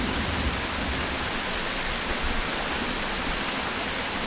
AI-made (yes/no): no